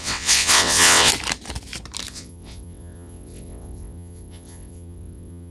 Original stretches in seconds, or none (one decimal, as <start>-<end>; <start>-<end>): 1.1-2.1